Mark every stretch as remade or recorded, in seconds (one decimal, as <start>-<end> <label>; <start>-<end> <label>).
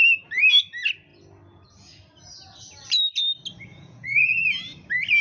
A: 0.0-3.7 recorded; 3.7-4.4 remade; 4.4-5.2 recorded